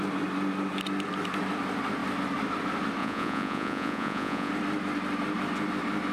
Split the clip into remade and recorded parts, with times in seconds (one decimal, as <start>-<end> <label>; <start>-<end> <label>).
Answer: 0.0-3.0 recorded; 3.0-4.5 remade; 4.5-6.1 recorded